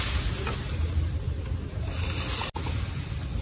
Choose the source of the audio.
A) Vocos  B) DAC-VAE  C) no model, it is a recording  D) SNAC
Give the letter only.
C